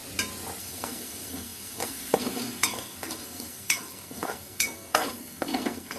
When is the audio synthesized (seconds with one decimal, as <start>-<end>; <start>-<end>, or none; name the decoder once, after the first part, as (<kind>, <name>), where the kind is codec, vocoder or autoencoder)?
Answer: 0.6-6.0 (codec, SNAC)